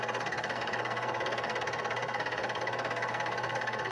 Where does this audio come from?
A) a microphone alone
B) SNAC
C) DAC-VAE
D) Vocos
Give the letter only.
B